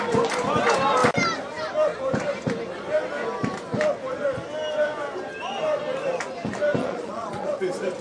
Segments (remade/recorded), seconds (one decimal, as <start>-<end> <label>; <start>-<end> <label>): 0.0-6.8 recorded; 6.8-7.5 remade; 7.5-8.0 recorded